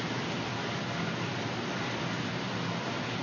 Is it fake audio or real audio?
real